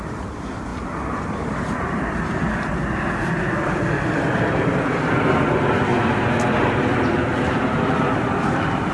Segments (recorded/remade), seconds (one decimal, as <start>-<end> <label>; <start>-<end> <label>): 0.0-5.9 remade; 5.9-6.4 recorded; 6.4-8.9 remade